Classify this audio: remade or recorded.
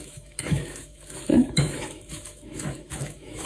remade